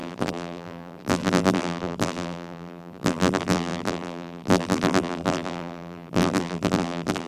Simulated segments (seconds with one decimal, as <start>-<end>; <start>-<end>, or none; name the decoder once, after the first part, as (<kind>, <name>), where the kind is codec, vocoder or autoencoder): 0.0-7.3 (vocoder, BigVGAN v2)